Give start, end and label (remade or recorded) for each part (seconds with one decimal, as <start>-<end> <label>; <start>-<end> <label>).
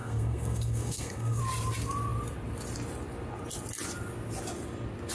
0.0-1.4 remade; 1.4-5.1 recorded